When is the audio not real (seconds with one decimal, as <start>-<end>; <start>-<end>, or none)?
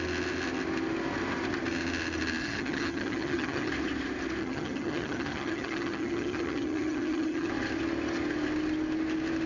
2.4-3.7; 4.4-7.5